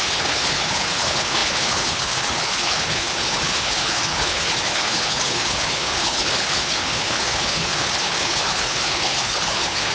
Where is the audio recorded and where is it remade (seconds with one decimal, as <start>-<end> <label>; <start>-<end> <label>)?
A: 0.0-9.9 remade